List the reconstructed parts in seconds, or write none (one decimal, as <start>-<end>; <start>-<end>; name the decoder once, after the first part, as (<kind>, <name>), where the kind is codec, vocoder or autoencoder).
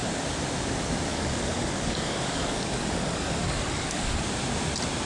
1.1-4.2 (codec, DAC)